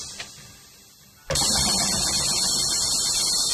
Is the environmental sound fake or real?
real